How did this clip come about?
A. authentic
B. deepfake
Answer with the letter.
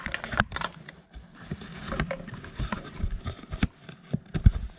A